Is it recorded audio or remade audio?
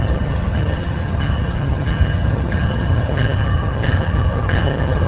remade